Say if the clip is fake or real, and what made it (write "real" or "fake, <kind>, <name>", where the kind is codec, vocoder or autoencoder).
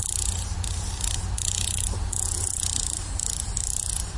real